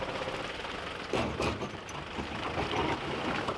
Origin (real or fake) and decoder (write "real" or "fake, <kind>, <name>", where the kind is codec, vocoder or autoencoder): real